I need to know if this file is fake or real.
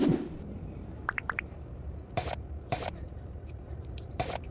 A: fake